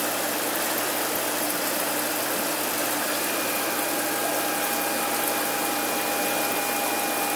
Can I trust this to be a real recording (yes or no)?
yes